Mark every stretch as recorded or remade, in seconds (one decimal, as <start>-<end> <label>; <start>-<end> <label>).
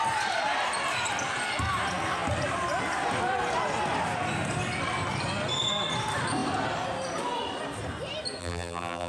0.0-8.4 recorded; 8.4-9.1 remade